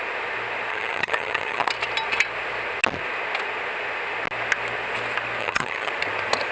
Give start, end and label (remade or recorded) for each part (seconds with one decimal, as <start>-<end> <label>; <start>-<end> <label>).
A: 0.0-0.7 recorded; 0.7-1.7 remade; 1.7-5.4 recorded; 5.4-5.9 remade; 5.9-6.5 recorded